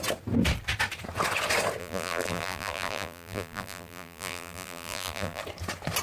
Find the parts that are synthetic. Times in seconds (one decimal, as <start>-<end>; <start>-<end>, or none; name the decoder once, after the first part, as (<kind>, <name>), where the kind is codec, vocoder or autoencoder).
1.8-5.4 (vocoder, BigVGAN v2)